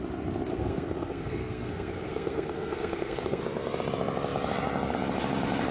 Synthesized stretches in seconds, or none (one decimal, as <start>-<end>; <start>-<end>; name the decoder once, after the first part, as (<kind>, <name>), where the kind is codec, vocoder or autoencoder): 0.5-3.4 (codec, SNAC)